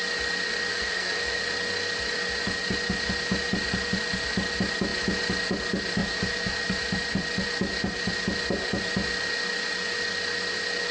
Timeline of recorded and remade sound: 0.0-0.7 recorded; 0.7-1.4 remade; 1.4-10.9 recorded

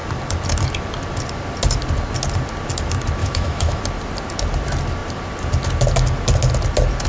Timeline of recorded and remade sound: 0.0-3.2 recorded; 3.2-3.8 remade; 3.8-7.1 recorded

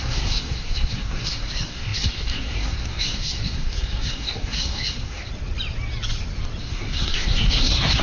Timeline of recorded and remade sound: 0.0-5.3 remade; 5.3-6.6 recorded; 6.6-8.0 remade

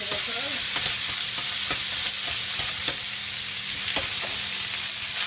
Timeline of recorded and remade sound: 0.0-3.2 recorded; 3.2-3.8 remade; 3.8-5.3 recorded

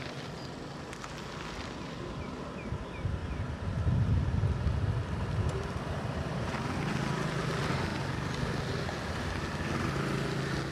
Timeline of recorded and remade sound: 0.0-10.7 recorded

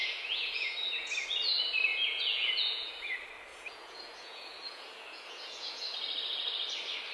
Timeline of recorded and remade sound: 0.0-1.1 remade; 1.1-1.9 recorded; 1.9-3.1 remade; 3.1-3.5 recorded; 3.5-5.8 remade; 5.8-7.1 recorded

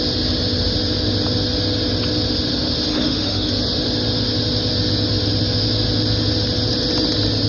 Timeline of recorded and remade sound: 0.0-2.9 recorded; 2.9-3.5 remade; 3.5-7.5 recorded

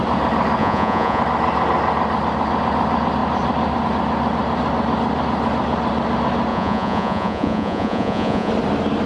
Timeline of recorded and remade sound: 0.0-0.6 recorded; 0.6-1.2 remade; 1.2-6.5 recorded; 6.5-8.5 remade; 8.5-9.1 recorded